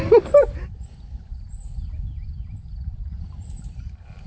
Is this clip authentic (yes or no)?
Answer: yes